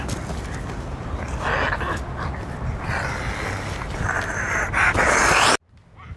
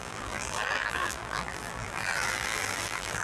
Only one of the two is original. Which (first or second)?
first